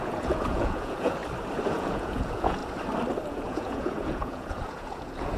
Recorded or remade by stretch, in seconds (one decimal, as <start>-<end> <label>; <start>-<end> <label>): 0.0-1.2 remade; 1.2-1.7 recorded; 1.7-2.6 remade; 2.6-3.3 recorded; 3.3-5.4 remade